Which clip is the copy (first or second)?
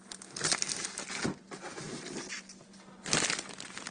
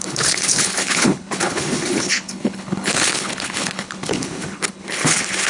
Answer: second